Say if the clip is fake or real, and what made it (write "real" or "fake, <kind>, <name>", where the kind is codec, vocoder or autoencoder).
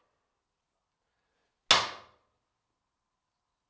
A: real